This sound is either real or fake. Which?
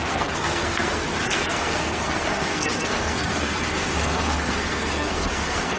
fake